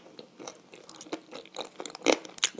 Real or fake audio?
real